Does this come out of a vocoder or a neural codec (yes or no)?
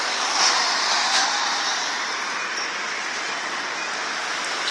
no